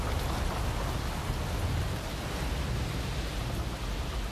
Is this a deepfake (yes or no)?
no